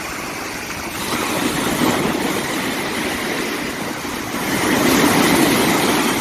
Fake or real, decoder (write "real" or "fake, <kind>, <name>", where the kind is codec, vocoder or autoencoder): real